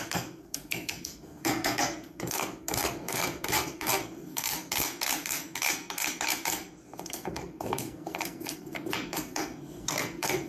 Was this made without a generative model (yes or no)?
no